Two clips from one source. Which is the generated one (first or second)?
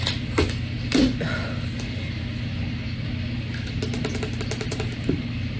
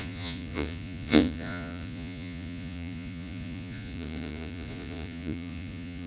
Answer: second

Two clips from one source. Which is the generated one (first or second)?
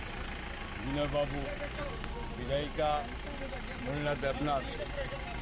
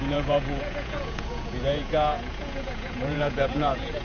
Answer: second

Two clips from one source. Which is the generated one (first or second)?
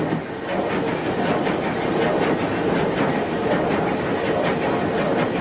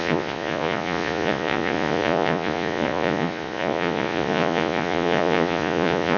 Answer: second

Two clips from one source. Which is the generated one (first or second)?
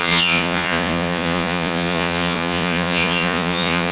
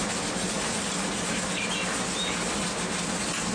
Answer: first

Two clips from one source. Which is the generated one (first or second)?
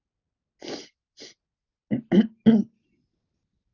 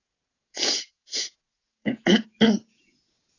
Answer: second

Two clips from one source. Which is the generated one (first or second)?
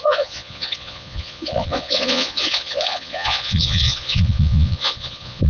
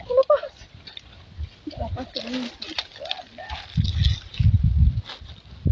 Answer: first